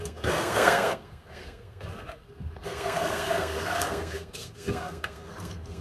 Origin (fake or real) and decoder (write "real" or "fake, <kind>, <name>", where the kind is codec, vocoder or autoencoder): fake, codec, SNAC